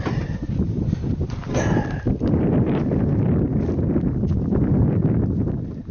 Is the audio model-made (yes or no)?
no